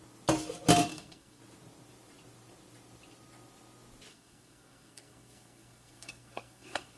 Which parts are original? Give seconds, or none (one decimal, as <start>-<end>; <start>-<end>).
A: 0.0-0.9; 1.4-4.1